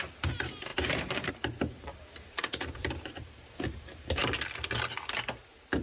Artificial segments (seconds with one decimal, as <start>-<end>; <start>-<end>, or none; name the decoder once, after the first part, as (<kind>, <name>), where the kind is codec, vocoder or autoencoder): 0.0-4.2 (vocoder, BigVGAN v2)